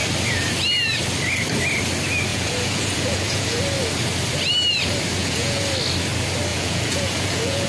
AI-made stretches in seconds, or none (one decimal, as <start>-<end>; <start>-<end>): 2.3-3.6; 5.2-5.7; 6.5-7.7